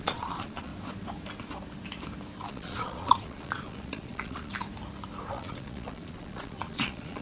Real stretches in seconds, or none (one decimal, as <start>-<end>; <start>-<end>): 0.7-2.5; 4.5-5.3